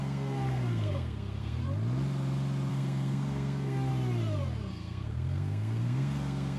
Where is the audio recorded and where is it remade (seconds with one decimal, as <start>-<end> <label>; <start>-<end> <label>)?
0.0-1.6 remade; 1.6-2.7 recorded; 2.7-3.9 remade; 3.9-4.7 recorded; 4.7-6.6 remade